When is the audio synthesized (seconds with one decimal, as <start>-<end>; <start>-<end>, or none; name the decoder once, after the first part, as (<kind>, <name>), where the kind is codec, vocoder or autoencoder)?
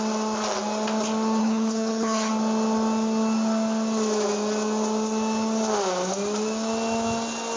1.4-2.3 (codec, HILCodec)